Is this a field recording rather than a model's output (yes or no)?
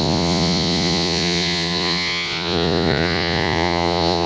no